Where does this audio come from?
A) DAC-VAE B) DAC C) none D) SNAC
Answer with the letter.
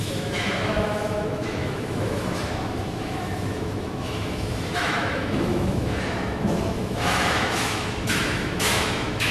A